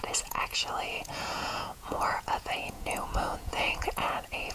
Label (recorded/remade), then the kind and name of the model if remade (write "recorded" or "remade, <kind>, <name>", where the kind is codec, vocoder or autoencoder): remade, vocoder, Vocos